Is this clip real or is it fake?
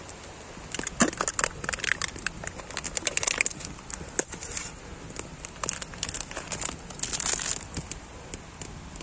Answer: real